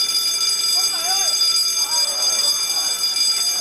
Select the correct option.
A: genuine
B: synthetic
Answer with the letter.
A